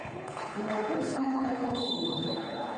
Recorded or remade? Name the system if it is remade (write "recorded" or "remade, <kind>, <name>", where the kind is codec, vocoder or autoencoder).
remade, codec, HILCodec